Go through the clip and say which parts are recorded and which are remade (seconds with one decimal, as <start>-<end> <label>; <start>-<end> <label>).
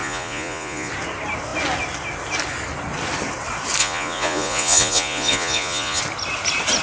0.0-0.9 remade; 0.9-3.8 recorded; 3.8-6.0 remade; 6.0-6.8 recorded